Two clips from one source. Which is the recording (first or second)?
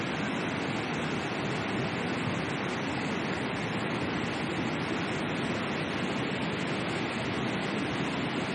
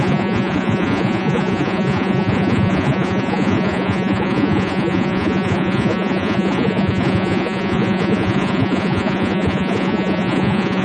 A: first